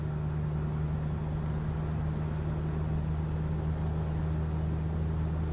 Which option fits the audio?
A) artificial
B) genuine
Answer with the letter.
B